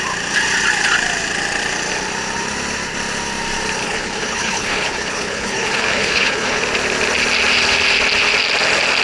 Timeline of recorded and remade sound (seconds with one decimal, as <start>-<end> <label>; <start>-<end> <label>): 0.0-3.8 recorded; 3.8-6.6 remade; 6.6-9.0 recorded